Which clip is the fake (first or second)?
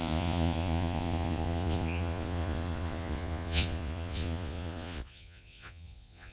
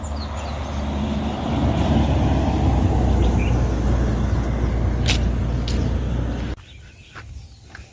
first